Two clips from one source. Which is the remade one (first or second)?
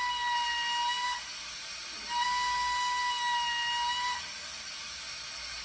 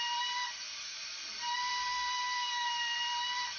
second